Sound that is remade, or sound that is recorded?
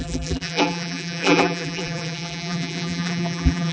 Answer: remade